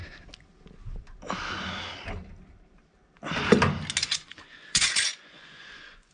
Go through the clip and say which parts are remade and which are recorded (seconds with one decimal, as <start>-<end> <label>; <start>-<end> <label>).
0.0-4.0 recorded; 4.0-6.1 remade